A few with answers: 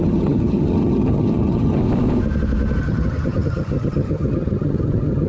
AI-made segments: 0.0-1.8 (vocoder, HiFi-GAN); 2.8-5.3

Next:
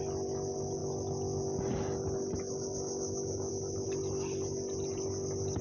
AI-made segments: none

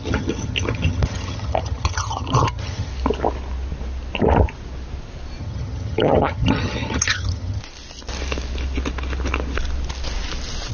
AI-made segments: 0.0-2.9 (vocoder, HiFi-GAN); 5.4-7.6

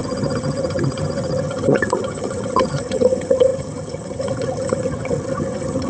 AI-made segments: 0.0-5.9 (vocoder, HiFi-GAN)

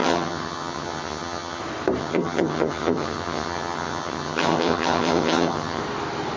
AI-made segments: 0.0-1.6 (vocoder, HiFi-GAN); 2.0-5.8